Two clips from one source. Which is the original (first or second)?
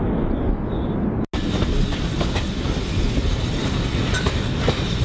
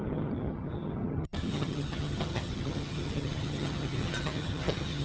first